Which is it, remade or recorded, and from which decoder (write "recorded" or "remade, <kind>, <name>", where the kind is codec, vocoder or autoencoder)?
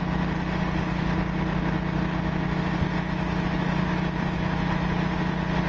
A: recorded